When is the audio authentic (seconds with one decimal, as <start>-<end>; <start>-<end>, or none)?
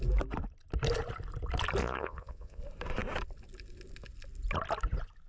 0.0-1.8; 2.6-5.3